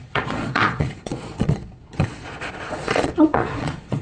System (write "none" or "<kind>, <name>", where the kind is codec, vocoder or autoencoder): vocoder, Vocos